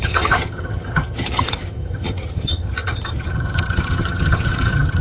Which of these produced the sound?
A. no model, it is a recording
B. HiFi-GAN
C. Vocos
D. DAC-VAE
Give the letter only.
B